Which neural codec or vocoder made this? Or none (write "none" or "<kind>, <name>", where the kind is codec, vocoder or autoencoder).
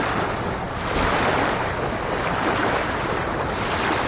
none